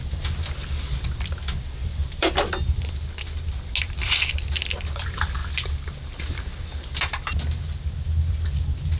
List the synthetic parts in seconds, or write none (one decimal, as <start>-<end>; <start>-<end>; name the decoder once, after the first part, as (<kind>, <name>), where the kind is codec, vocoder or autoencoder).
2.0-2.5 (vocoder, BigVGAN v2)

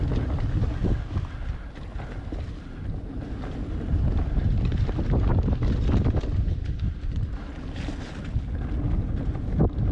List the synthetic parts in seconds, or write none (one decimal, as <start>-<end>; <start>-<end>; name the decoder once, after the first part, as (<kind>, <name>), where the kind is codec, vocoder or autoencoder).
none